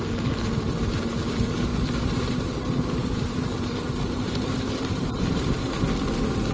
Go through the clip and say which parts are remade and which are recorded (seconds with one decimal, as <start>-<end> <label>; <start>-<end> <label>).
0.0-1.7 recorded; 1.7-5.6 remade; 5.6-6.5 recorded